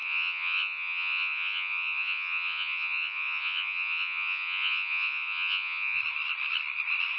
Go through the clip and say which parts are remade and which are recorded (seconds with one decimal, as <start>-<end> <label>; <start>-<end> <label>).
0.0-6.0 remade; 6.0-7.2 recorded